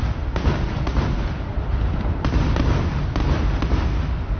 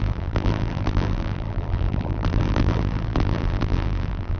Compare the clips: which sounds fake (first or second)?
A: second